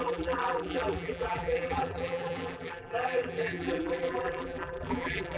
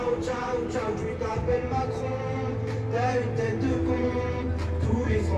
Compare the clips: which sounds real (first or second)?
second